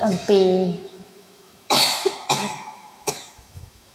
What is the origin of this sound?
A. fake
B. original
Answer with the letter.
A